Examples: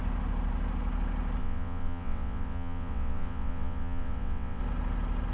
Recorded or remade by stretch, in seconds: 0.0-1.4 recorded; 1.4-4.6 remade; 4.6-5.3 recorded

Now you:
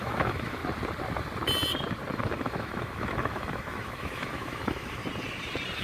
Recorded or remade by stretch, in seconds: 0.0-0.6 remade; 0.6-2.1 recorded; 2.1-5.0 remade; 5.0-5.8 recorded

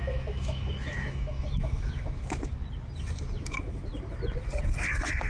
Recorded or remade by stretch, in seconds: 0.0-2.5 remade; 2.5-3.4 recorded; 3.4-3.9 remade; 3.9-5.3 recorded